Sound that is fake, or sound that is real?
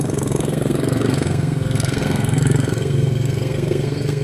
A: fake